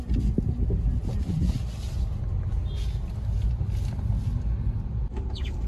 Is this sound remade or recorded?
recorded